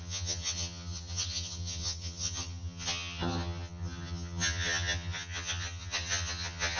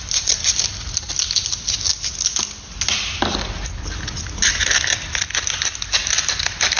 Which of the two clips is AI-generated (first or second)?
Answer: first